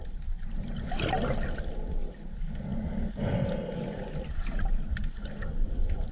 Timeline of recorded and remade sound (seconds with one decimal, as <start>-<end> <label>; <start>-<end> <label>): 0.0-6.1 recorded